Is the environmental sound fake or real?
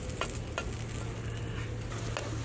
real